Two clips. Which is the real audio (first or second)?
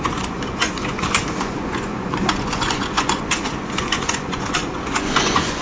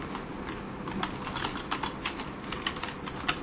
second